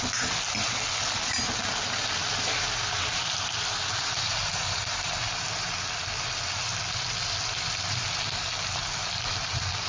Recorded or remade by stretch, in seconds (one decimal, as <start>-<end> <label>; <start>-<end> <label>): 0.0-4.3 recorded; 4.3-5.1 remade; 5.1-9.9 recorded

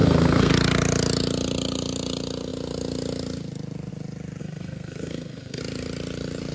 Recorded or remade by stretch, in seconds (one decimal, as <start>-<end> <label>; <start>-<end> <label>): 0.0-0.5 remade; 0.5-4.4 recorded; 4.4-5.6 remade; 5.6-6.5 recorded

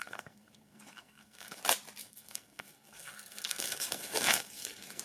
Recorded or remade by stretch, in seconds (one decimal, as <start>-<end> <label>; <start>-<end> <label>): 0.0-1.6 remade; 1.6-2.0 recorded; 2.0-5.0 remade

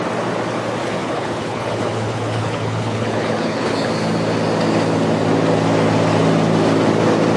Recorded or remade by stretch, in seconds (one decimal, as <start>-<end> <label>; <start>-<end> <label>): 0.0-1.0 recorded; 1.0-3.9 remade; 3.9-7.4 recorded